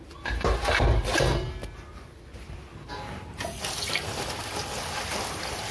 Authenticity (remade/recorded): recorded